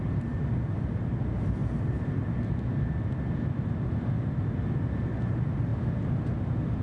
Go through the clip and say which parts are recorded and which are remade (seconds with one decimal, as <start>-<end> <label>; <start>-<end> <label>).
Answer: 0.0-6.8 recorded